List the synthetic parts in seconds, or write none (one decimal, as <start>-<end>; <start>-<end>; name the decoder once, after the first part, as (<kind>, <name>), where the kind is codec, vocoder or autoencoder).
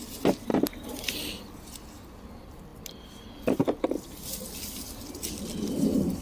none